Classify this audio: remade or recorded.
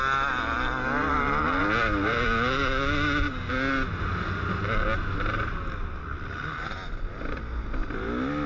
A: recorded